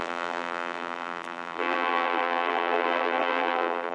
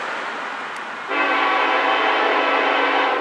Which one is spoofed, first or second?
first